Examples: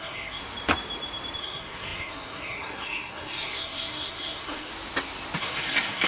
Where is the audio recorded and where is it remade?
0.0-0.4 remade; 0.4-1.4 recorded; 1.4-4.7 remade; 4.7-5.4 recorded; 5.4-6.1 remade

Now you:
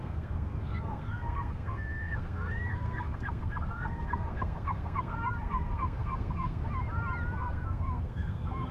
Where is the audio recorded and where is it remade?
0.0-6.6 remade; 6.6-7.4 recorded; 7.4-8.7 remade